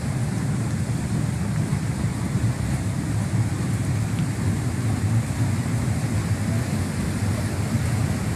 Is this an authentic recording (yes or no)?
yes